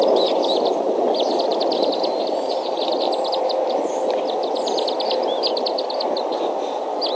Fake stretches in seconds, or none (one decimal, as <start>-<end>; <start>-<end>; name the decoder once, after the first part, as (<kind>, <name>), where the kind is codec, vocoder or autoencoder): none